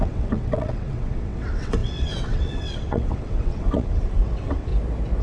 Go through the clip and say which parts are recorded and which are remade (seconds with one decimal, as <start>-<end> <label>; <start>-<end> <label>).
0.0-4.7 remade; 4.7-5.2 recorded